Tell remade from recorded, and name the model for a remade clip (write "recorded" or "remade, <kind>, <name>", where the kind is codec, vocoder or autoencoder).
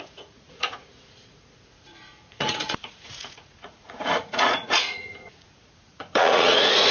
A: remade, vocoder, Vocos